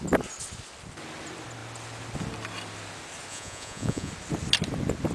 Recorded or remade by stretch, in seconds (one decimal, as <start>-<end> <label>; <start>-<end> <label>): 0.0-3.3 recorded; 3.3-4.1 remade; 4.1-5.1 recorded